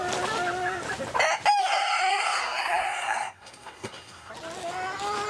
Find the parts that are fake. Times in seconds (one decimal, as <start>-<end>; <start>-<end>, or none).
1.6-4.3